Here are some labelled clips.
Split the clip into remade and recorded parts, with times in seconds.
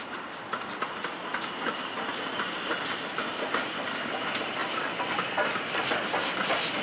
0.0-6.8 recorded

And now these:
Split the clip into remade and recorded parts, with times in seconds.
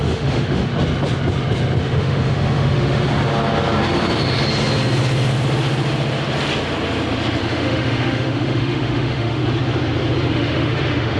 0.0-0.7 remade; 0.7-1.8 recorded; 1.8-3.0 remade; 3.0-7.4 recorded; 7.4-9.4 remade; 9.4-10.3 recorded; 10.3-11.2 remade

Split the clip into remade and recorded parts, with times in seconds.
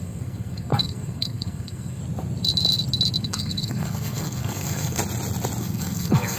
0.0-2.0 remade; 2.0-3.2 recorded; 3.2-5.0 remade; 5.0-5.6 recorded; 5.6-6.4 remade